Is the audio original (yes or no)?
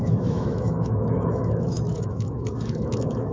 no